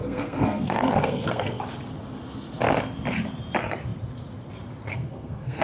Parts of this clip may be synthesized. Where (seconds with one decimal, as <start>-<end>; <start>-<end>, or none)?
0.0-1.6; 4.9-5.6